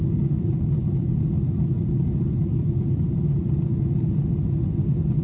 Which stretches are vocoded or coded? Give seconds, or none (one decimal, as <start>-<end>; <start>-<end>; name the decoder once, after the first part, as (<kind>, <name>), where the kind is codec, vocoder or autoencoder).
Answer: none

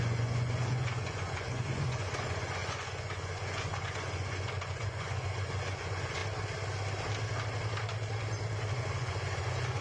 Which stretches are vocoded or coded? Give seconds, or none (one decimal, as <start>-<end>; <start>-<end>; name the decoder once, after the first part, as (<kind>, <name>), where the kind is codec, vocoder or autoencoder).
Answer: 0.0-6.2 (vocoder, Vocos); 8.7-9.8